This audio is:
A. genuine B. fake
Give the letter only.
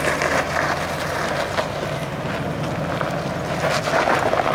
A